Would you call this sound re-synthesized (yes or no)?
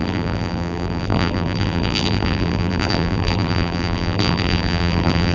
yes